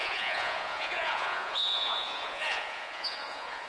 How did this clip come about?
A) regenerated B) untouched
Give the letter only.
A